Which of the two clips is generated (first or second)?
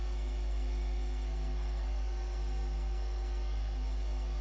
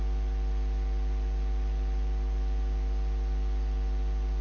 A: first